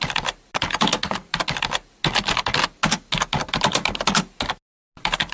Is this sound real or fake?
real